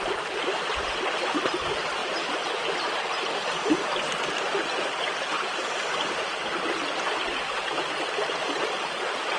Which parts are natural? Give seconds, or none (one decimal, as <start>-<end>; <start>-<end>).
0.0-9.4